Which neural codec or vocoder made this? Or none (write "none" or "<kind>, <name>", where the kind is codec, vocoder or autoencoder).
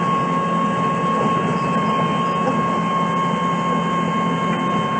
none